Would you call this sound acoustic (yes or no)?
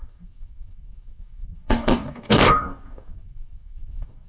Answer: no